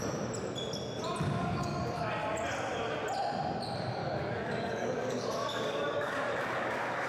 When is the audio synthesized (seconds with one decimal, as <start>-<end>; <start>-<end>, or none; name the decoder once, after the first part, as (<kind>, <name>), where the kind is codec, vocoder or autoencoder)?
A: 1.4-2.0 (codec, DAC); 4.0-7.1